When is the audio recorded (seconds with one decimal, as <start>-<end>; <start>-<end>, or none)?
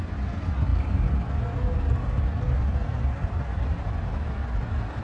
0.0-5.0